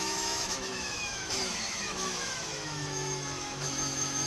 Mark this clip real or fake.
fake